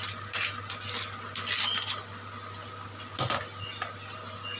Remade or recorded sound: recorded